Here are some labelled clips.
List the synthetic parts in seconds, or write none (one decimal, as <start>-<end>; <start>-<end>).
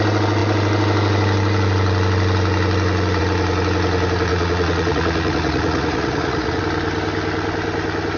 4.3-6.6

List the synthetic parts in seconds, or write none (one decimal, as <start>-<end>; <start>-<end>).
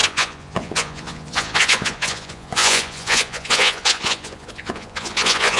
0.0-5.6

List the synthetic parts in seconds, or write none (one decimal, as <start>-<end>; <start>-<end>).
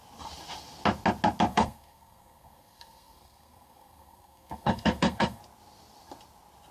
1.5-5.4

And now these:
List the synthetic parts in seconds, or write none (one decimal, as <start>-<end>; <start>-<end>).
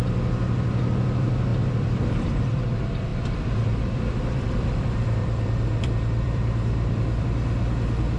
1.5-2.5; 3.1-7.2